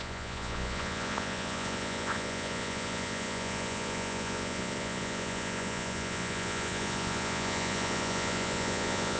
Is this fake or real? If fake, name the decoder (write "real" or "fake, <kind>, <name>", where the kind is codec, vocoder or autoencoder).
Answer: fake, vocoder, Vocos